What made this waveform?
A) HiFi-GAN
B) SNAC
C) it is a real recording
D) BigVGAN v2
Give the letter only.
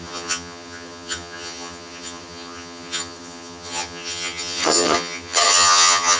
A